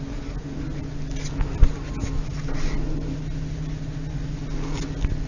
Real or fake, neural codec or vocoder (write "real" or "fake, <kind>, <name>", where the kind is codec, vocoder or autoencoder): real